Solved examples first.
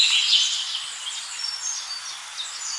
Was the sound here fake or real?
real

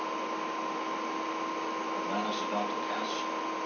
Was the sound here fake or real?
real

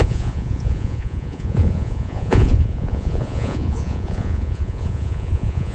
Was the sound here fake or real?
fake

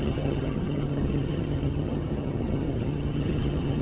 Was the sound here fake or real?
fake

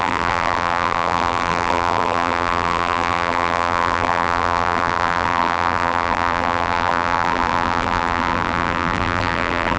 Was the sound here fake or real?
fake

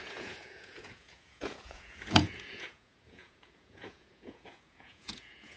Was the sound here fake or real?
fake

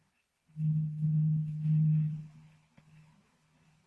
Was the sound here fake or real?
fake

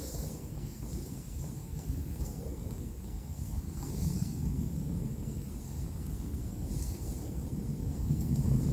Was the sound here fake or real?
fake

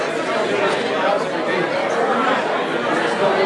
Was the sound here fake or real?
real